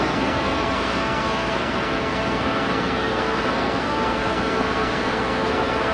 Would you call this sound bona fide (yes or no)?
no